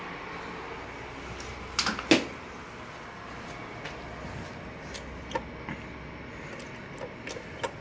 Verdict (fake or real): real